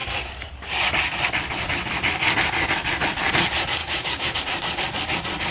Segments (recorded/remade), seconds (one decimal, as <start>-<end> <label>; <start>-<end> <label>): 0.0-3.8 recorded; 3.8-4.4 remade; 4.4-5.5 recorded